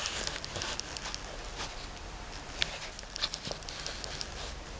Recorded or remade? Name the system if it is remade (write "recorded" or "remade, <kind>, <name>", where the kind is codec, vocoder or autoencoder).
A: recorded